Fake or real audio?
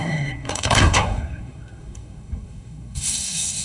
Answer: fake